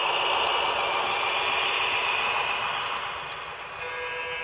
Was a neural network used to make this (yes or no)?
no